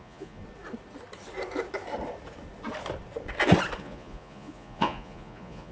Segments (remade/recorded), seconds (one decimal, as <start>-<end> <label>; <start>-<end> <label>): 0.0-0.4 remade; 0.4-3.8 recorded; 3.8-5.7 remade